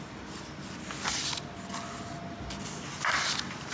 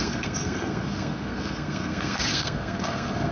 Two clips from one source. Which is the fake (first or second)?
second